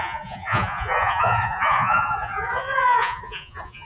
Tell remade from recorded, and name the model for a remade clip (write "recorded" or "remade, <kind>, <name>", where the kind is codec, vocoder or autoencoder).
remade, vocoder, Vocos